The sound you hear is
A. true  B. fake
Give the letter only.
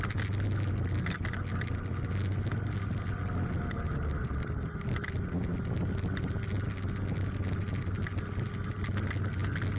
A